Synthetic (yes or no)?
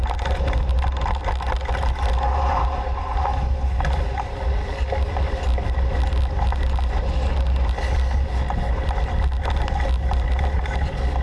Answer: no